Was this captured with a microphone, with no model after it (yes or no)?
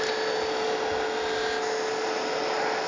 yes